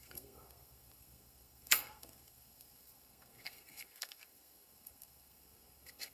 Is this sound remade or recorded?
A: remade